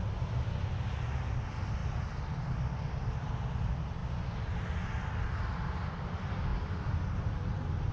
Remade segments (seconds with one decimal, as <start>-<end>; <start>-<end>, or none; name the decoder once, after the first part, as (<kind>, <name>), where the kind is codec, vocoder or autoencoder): none